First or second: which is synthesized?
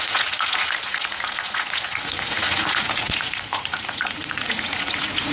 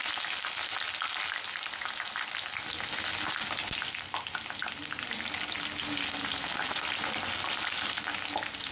first